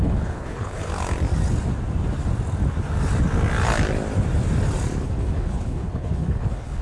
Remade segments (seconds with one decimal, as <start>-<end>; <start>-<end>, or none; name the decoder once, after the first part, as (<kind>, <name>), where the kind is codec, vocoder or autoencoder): 0.0-0.9 (codec, HILCodec); 5.0-6.8